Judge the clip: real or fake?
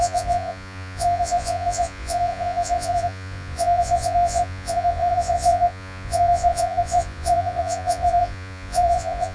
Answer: fake